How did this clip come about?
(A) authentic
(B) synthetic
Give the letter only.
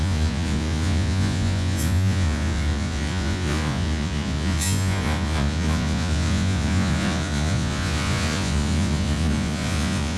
B